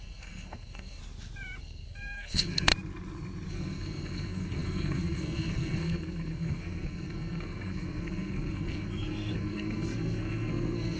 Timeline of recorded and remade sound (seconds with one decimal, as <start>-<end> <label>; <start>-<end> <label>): 0.0-1.0 remade; 1.0-1.6 recorded; 1.6-2.7 remade; 2.7-3.5 recorded; 3.5-11.0 remade